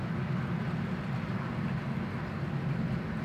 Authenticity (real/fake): real